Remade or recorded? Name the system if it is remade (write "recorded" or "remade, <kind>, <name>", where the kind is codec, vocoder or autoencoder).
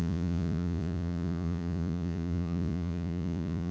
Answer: remade, vocoder, Vocos